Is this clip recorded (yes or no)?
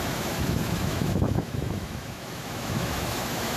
no